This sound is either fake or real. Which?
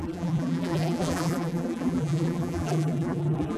fake